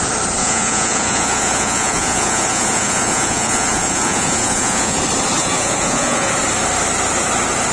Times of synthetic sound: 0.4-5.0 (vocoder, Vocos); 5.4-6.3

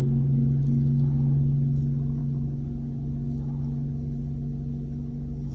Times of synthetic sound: none

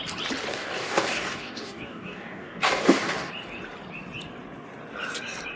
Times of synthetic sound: 0.5-3.3 (codec, DAC)

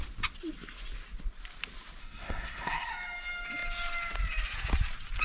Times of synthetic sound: 2.0-2.9 (codec, SNAC)

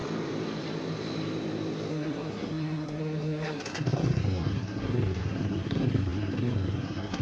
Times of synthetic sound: 1.9-7.2 (codec, SNAC)

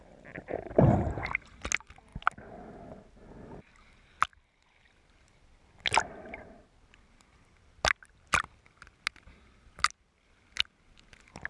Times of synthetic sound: none